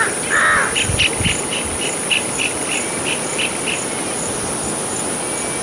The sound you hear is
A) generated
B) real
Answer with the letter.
B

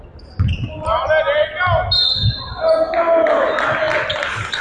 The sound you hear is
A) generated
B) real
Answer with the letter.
B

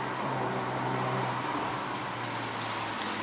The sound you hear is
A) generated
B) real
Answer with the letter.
B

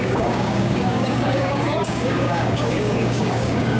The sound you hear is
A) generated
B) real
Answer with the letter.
A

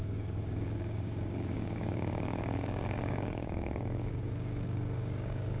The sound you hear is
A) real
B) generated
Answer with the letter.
B